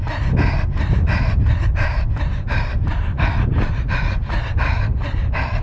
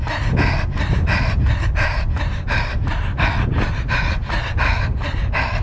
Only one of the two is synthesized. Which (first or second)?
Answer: first